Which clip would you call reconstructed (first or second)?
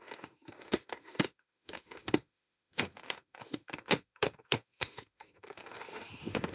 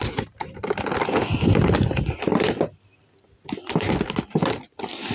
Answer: first